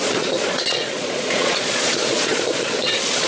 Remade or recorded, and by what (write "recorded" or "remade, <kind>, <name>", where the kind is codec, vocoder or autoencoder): remade, vocoder, Vocos